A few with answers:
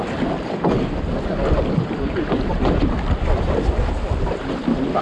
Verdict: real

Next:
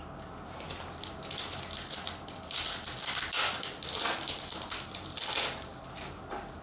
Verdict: real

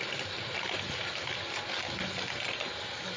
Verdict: real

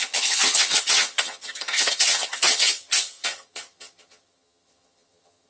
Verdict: fake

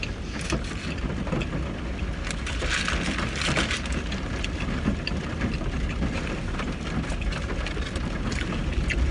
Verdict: real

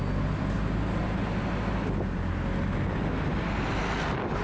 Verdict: real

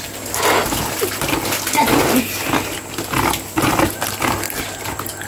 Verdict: real